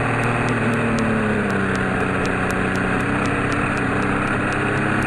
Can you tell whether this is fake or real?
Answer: real